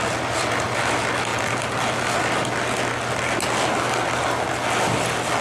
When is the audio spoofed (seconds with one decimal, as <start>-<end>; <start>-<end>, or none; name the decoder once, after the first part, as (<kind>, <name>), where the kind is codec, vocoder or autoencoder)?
none